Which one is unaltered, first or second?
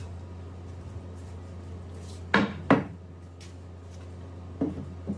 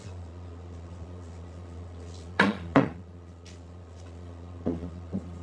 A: first